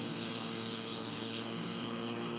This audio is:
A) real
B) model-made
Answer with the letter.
B